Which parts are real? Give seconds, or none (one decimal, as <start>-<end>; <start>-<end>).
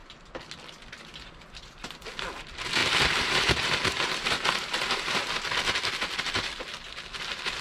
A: 0.0-2.8; 5.2-7.6